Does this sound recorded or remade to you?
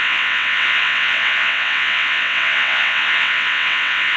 remade